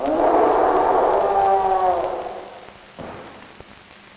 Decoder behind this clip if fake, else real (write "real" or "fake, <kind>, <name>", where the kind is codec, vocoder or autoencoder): real